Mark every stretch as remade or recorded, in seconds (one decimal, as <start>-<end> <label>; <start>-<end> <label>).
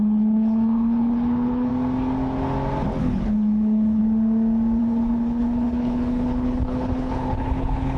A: 0.0-1.7 remade; 1.7-3.0 recorded; 3.0-4.0 remade; 4.0-4.8 recorded; 4.8-8.0 remade